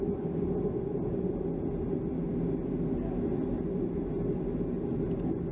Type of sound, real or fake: real